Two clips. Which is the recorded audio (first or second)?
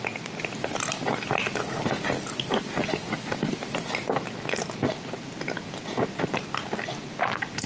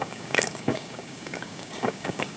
first